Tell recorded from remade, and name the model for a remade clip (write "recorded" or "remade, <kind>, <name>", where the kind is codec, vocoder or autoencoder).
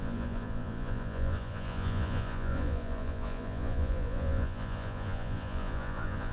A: remade, vocoder, Vocos